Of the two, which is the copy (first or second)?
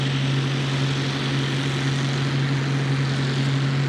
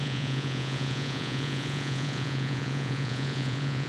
second